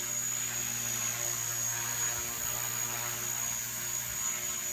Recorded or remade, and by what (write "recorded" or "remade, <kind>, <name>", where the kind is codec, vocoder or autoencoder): recorded